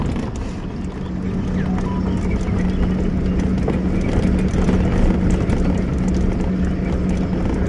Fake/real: real